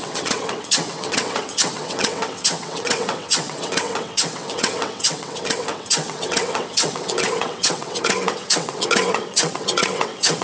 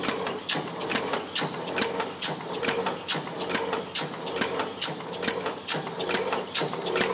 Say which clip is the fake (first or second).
first